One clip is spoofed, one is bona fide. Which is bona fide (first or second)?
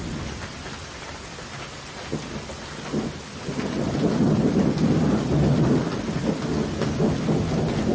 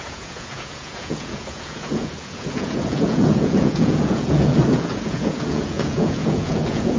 first